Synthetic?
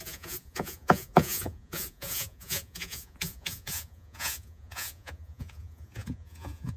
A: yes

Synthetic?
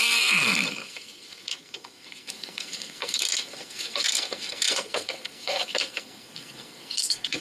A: yes